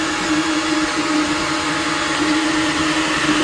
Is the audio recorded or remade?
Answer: recorded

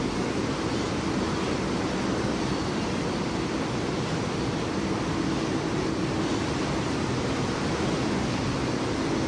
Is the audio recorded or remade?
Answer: recorded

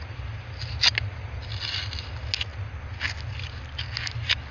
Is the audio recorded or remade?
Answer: recorded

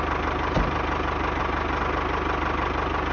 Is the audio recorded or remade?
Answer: recorded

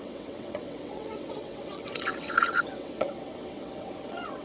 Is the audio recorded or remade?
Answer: remade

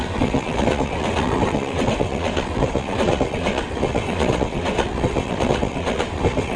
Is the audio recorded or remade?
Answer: remade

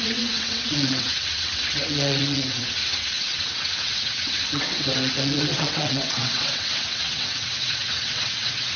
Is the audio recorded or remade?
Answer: remade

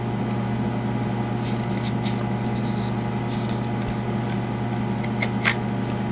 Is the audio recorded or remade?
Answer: recorded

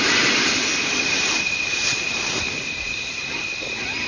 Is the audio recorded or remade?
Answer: recorded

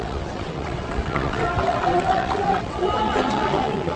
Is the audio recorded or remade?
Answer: remade